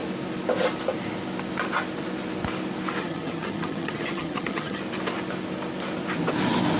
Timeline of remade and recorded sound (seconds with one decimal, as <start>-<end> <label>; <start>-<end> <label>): 0.0-3.0 recorded; 3.0-4.8 remade; 4.8-6.8 recorded